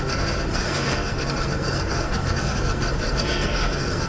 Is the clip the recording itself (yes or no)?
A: no